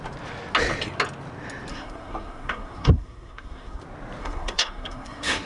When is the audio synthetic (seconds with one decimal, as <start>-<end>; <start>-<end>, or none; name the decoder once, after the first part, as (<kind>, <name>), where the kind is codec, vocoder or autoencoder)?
1.7-3.8 (codec, SNAC); 4.2-5.5